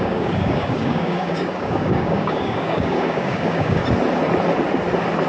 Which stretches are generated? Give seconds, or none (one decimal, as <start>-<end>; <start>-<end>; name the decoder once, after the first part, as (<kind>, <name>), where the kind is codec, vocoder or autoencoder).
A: 0.0-3.8 (codec, DAC)